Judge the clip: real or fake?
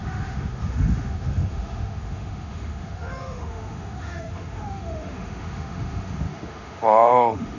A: fake